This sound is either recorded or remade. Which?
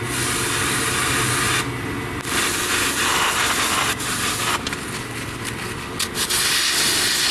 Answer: recorded